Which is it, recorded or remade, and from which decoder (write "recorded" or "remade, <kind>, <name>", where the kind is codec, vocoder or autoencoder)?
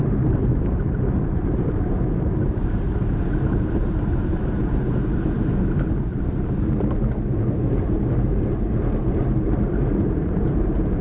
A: remade, vocoder, BigVGAN v2